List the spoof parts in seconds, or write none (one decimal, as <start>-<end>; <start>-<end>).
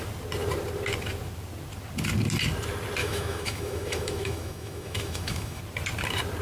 3.0-5.6